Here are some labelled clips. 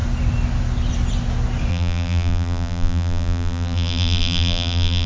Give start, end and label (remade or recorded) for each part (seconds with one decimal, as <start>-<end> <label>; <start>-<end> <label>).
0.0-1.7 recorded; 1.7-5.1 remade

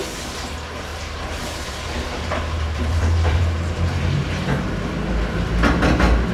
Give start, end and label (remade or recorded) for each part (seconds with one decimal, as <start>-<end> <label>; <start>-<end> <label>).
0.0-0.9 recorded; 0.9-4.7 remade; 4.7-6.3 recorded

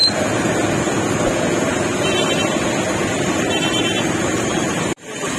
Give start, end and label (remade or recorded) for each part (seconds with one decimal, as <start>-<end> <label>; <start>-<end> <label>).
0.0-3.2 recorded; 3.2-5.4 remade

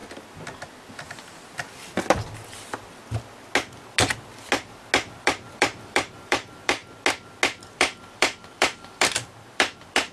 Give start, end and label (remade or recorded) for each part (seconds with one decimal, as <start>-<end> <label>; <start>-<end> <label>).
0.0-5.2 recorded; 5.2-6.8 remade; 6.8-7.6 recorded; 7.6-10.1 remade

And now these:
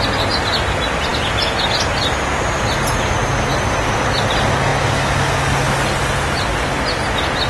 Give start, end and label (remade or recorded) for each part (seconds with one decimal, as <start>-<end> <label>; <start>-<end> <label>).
0.0-7.5 recorded

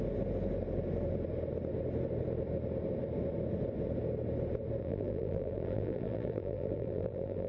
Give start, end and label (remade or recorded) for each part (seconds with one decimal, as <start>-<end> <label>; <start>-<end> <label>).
0.0-4.8 recorded; 4.8-7.5 remade

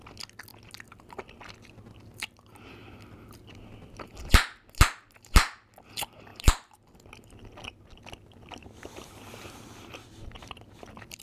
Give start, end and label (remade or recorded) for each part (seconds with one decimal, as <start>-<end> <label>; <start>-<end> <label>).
0.0-11.2 recorded